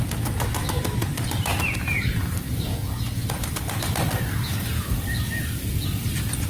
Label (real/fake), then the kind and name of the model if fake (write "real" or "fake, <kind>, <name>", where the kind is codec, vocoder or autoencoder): real